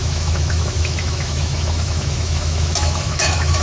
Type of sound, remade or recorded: remade